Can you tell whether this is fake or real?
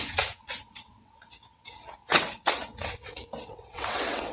fake